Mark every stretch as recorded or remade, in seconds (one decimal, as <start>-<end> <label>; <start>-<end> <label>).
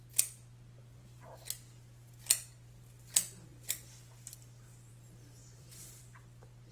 0.0-0.8 recorded; 0.8-1.3 remade; 1.3-5.4 recorded; 5.4-6.0 remade; 6.0-6.7 recorded